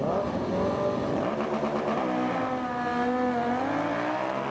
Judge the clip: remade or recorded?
recorded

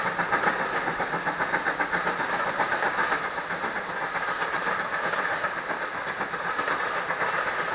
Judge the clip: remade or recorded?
recorded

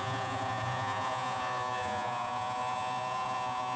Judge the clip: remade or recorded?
remade